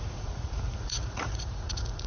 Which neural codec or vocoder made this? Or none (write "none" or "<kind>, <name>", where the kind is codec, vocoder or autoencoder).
vocoder, Vocos